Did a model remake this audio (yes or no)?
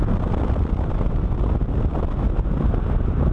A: no